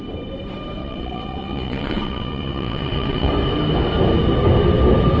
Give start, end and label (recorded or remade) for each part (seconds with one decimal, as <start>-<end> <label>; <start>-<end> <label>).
0.0-0.8 recorded; 0.8-3.3 remade; 3.3-5.2 recorded